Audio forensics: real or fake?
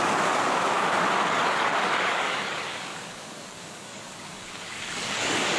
fake